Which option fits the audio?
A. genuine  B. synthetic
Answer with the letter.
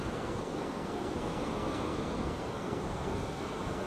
B